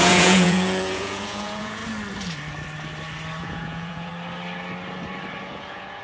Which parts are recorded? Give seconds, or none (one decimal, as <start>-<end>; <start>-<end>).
1.8-3.4; 4.1-5.4